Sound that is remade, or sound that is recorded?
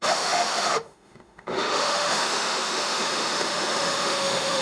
remade